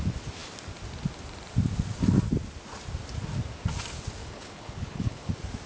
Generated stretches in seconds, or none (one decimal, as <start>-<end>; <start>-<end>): 4.2-5.3